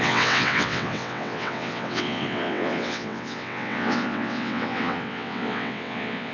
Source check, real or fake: fake